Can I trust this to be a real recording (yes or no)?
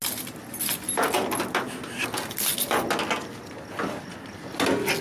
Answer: yes